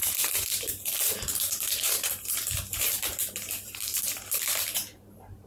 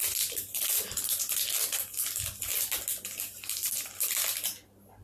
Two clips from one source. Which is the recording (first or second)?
second